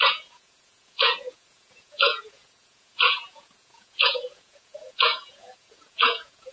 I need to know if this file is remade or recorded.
remade